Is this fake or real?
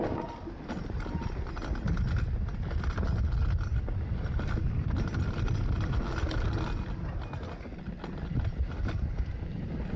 real